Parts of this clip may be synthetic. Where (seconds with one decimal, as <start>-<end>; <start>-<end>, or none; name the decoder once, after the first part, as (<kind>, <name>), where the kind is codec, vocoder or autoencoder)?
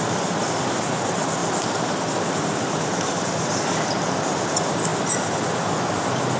none